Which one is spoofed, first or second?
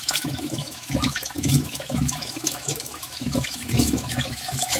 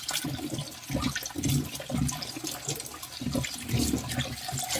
first